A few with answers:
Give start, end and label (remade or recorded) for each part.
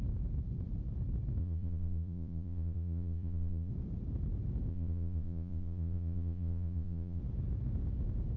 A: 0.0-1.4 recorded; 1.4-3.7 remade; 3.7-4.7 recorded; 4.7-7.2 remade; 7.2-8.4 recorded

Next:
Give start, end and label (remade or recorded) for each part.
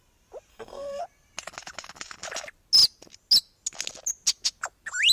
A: 0.0-0.5 recorded; 0.5-1.0 remade; 1.0-5.1 recorded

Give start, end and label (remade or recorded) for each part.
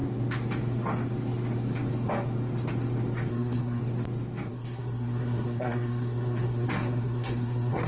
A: 0.0-3.3 recorded; 3.3-3.8 remade; 3.8-4.5 recorded; 4.5-7.9 remade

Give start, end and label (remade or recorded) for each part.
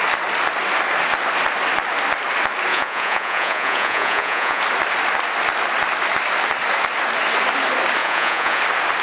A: 0.0-2.7 recorded; 2.7-4.6 remade; 4.6-8.0 recorded; 8.0-8.6 remade; 8.6-9.0 recorded